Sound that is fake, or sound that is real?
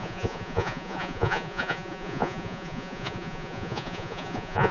fake